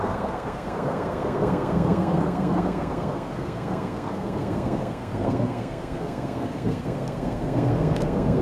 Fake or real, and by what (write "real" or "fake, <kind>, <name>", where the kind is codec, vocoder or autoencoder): fake, codec, SNAC